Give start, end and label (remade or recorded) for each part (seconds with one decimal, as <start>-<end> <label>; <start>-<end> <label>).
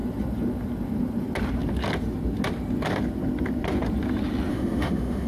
0.0-4.5 recorded; 4.5-5.3 remade